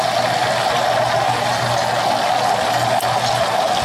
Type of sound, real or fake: real